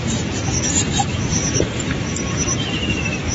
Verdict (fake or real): real